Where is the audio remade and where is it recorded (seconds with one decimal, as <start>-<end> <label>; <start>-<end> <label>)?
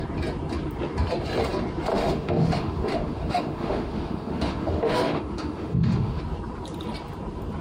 0.0-1.9 recorded; 1.9-6.2 remade; 6.2-7.6 recorded